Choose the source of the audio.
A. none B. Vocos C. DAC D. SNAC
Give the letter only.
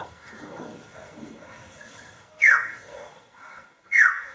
D